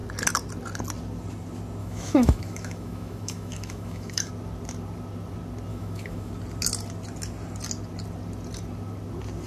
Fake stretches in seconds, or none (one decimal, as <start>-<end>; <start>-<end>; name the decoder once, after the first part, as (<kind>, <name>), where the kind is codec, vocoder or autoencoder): 1.8-4.3 (autoencoder, DAC-VAE); 5.7-6.3